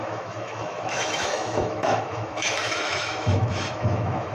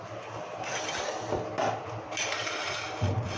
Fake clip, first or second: first